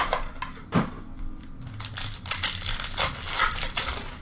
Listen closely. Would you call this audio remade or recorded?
recorded